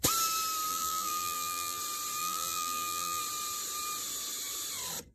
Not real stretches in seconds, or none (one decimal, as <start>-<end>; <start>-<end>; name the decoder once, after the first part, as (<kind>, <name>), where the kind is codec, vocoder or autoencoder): 0.7-1.8 (vocoder, BigVGAN v2); 2.2-3.2